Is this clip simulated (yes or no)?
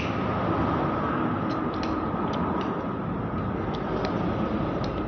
no